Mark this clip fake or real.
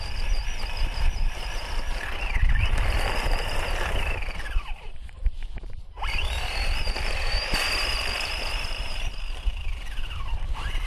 fake